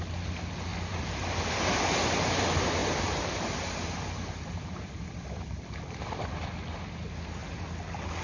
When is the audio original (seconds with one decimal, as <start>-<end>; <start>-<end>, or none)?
0.0-0.7; 2.4-2.8; 6.3-8.2

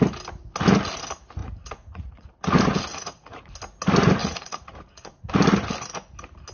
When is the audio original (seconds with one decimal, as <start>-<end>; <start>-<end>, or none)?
0.0-1.4; 2.3-2.9; 3.5-4.2; 5.3-6.5

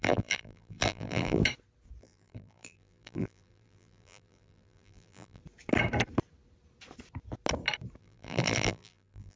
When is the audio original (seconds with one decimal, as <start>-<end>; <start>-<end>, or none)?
1.4-2.0; 5.4-8.0

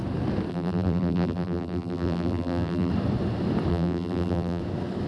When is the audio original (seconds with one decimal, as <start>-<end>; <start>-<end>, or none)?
0.0-0.5; 2.9-3.7; 4.6-5.1

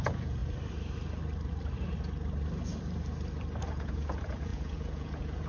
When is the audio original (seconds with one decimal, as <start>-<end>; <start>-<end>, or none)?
0.4-3.7

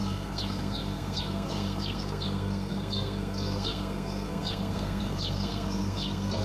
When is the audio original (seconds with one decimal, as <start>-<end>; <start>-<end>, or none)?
none

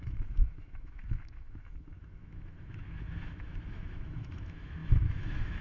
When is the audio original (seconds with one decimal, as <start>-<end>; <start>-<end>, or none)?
none

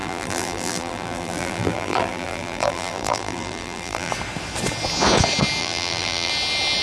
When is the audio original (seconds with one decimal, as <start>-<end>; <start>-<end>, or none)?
4.1-5.6; 6.3-6.8